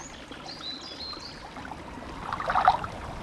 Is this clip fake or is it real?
real